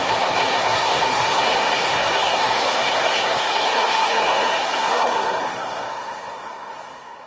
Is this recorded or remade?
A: remade